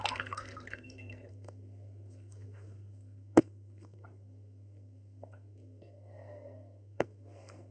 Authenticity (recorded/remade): remade